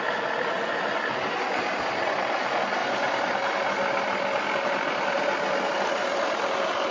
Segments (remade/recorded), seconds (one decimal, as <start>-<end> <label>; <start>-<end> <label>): 0.0-6.9 recorded